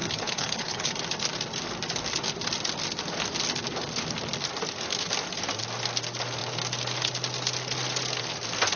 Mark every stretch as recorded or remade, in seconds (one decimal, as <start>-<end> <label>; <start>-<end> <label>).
0.0-0.9 remade; 0.9-8.8 recorded

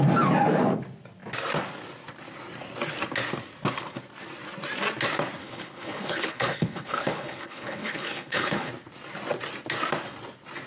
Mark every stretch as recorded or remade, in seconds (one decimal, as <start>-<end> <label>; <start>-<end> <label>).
0.0-5.4 recorded; 5.4-8.7 remade; 8.7-10.7 recorded